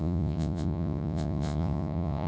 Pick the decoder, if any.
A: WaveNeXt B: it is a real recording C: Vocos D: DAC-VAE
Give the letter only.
C